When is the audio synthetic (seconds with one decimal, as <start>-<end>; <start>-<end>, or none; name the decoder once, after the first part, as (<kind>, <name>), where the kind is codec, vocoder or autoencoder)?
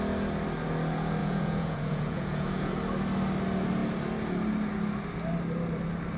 1.2-2.7 (vocoder, Vocos)